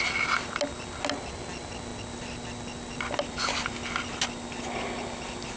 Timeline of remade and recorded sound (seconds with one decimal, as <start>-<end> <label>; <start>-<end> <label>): 0.0-5.6 recorded

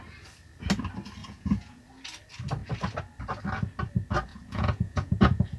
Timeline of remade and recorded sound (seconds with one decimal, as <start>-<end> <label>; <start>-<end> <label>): 0.0-1.2 recorded; 1.2-1.8 remade; 1.8-4.3 recorded; 4.3-5.6 remade

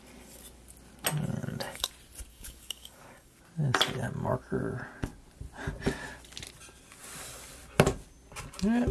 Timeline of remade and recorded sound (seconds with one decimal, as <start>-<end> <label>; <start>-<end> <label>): 0.0-1.4 recorded; 1.4-1.9 remade; 1.9-2.3 recorded; 2.3-3.4 remade; 3.4-8.9 recorded